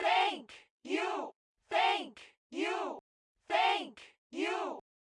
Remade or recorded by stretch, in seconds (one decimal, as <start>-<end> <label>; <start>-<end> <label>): 0.0-1.8 remade; 1.8-5.1 recorded